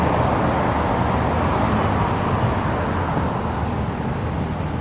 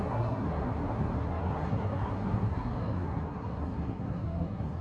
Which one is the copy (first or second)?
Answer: second